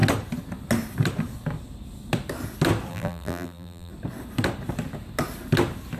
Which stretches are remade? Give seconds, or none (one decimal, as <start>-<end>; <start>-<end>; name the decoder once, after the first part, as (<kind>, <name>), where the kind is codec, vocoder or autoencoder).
2.9-3.9 (vocoder, BigVGAN v2)